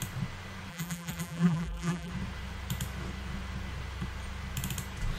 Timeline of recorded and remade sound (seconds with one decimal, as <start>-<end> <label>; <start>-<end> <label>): 0.0-0.7 recorded; 0.7-2.1 remade; 2.1-5.2 recorded